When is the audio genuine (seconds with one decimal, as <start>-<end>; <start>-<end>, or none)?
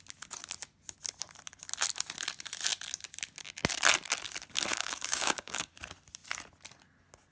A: 0.0-4.7; 5.7-7.3